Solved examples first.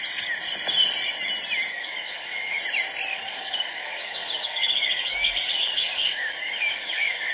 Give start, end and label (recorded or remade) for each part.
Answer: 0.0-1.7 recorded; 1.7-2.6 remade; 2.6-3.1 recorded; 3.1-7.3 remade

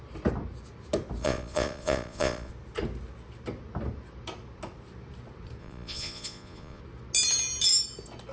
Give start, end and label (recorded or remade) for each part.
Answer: 0.0-1.2 recorded; 1.2-2.5 remade; 2.5-5.6 recorded; 5.6-6.8 remade; 6.8-8.3 recorded

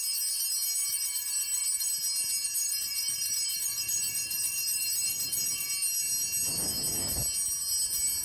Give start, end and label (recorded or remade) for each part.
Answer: 0.0-0.8 recorded; 0.8-1.9 remade; 1.9-2.6 recorded; 2.6-5.7 remade; 5.7-8.2 recorded

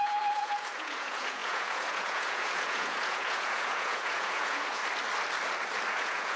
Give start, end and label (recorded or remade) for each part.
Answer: 0.0-4.8 remade; 4.8-5.9 recorded; 5.9-6.4 remade

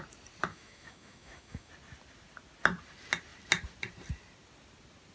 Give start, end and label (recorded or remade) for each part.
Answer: 0.0-0.5 recorded; 0.5-1.7 remade; 1.7-5.1 recorded